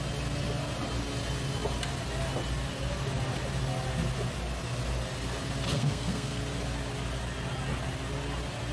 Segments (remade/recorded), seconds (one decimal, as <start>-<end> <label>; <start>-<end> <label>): 0.0-5.7 recorded; 5.7-6.4 remade; 6.4-8.7 recorded

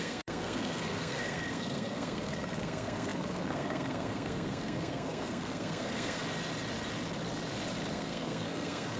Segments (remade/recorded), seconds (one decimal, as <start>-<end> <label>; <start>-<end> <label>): 0.0-6.2 remade; 6.2-7.9 recorded; 7.9-9.0 remade

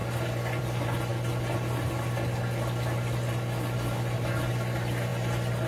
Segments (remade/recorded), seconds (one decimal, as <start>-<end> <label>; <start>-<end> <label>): 0.0-5.7 recorded

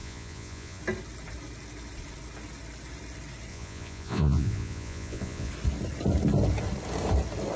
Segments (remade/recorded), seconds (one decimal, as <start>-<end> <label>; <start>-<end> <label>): 0.0-0.8 remade; 0.8-3.5 recorded; 3.5-5.5 remade; 5.5-7.6 recorded

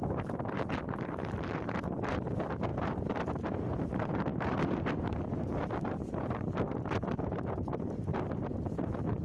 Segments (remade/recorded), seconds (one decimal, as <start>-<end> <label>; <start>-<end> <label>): 0.0-9.2 remade

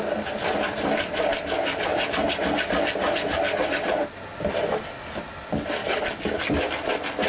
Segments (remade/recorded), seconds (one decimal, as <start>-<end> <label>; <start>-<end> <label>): 0.0-7.3 recorded

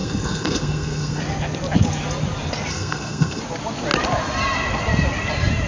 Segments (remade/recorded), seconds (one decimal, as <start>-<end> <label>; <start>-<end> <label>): 0.0-1.2 remade; 1.2-2.7 recorded; 2.7-3.4 remade; 3.4-5.7 recorded